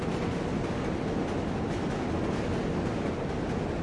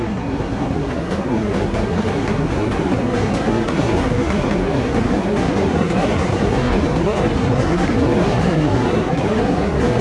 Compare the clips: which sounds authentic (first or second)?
first